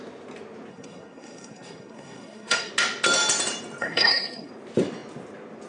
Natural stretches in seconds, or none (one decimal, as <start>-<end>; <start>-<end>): 0.0-0.7; 2.7-3.8; 4.5-5.7